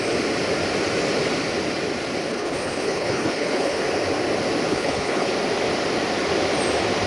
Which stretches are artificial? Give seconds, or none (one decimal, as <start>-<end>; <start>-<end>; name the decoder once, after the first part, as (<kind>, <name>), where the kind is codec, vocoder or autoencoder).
2.3-3.8 (codec, HILCodec); 4.7-5.3